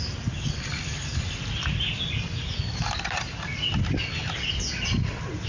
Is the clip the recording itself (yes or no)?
yes